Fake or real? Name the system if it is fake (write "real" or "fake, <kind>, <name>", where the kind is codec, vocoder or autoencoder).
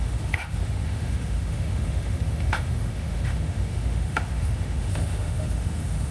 fake, autoencoder, DAC-VAE